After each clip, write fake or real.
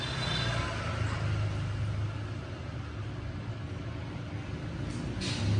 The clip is real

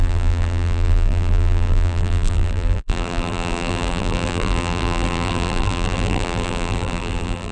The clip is fake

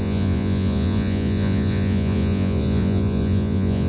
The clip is fake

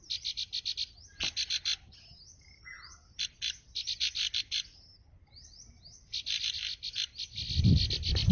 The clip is real